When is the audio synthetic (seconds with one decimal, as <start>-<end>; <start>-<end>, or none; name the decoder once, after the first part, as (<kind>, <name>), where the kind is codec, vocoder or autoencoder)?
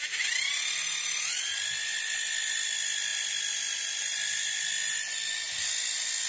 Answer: none